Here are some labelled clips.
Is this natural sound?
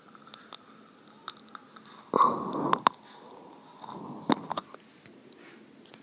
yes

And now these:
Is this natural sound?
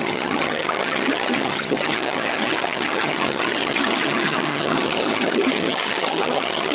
no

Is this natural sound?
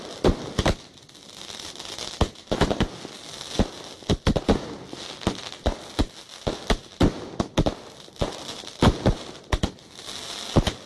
yes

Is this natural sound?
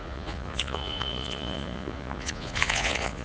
no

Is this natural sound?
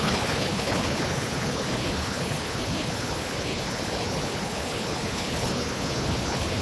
no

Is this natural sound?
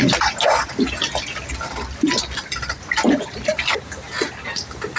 yes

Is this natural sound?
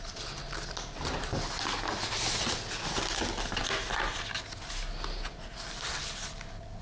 yes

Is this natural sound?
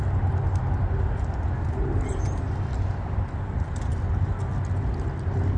yes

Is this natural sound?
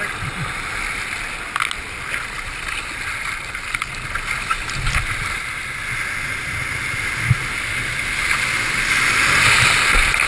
yes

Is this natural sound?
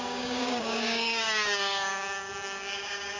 no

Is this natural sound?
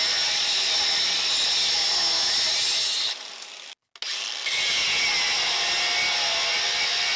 yes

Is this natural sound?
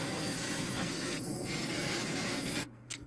no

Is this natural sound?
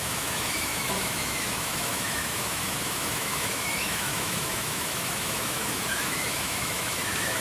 no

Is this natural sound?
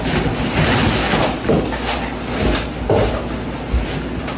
yes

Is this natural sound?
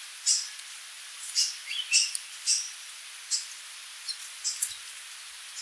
yes